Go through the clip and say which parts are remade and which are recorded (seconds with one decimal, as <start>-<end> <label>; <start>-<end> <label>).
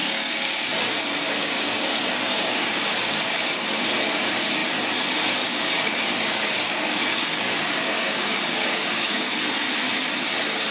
0.0-0.6 remade; 0.6-1.4 recorded; 1.4-3.5 remade; 3.5-5.5 recorded; 5.5-9.3 remade; 9.3-10.7 recorded